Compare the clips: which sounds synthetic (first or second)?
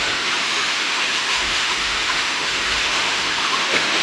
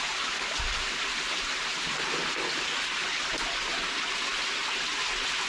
first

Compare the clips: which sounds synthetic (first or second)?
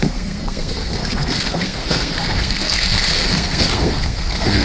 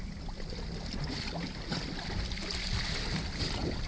first